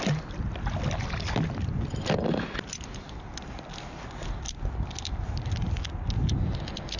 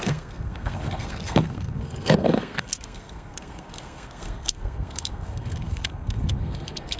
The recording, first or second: first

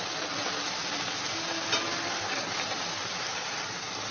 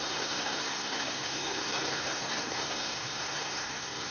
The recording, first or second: first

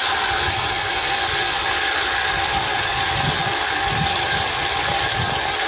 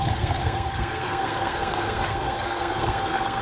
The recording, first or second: first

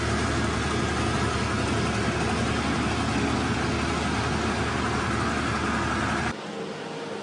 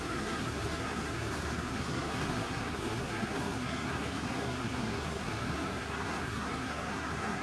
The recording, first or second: first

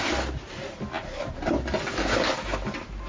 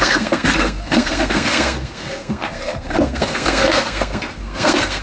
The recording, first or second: first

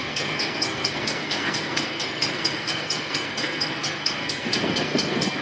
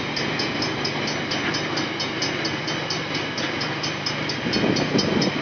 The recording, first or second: second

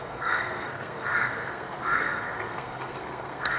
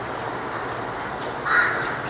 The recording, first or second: second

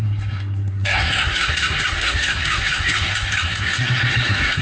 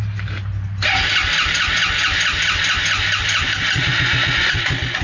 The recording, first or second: second